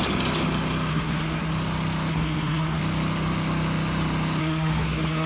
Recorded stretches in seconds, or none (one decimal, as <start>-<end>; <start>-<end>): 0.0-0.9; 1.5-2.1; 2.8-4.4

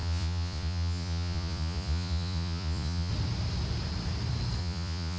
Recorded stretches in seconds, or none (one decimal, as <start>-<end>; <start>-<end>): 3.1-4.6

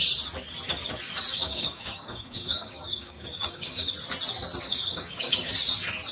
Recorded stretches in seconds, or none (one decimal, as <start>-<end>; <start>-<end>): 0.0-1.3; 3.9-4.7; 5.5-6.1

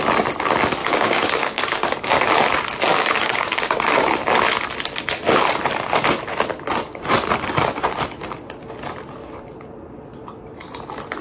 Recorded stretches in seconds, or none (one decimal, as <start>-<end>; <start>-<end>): 0.0-0.8; 2.2-2.9; 4.0-11.2

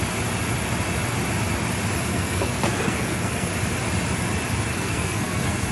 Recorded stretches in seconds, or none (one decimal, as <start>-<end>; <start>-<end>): 0.0-2.1; 3.5-4.7